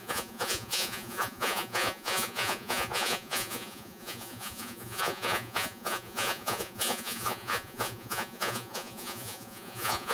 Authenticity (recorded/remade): remade